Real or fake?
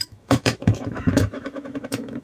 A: fake